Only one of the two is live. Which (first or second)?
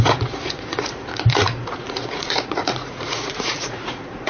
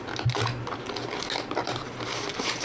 second